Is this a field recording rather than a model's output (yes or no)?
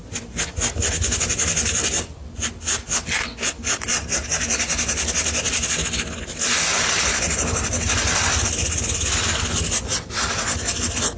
yes